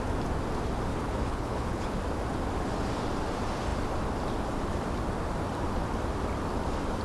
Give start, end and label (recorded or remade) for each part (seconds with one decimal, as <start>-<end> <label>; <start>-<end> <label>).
0.0-0.9 recorded; 0.9-1.9 remade; 1.9-7.0 recorded

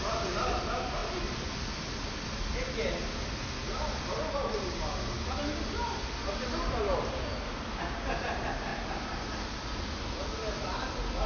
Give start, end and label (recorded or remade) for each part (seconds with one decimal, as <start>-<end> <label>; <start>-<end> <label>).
0.0-8.7 recorded; 8.7-10.0 remade; 10.0-11.3 recorded